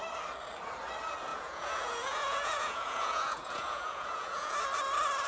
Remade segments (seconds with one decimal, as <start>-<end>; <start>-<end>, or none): 1.3-4.5